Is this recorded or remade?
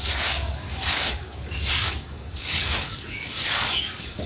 remade